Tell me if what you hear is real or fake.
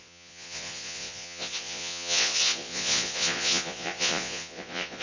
fake